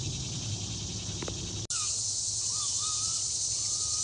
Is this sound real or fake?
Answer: real